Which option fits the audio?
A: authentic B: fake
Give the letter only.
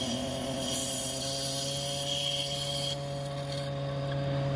A